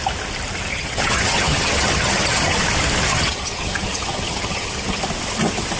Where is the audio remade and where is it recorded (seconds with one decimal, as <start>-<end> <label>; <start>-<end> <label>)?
0.0-0.7 recorded; 0.7-2.6 remade; 2.6-3.1 recorded; 3.1-5.0 remade; 5.0-5.8 recorded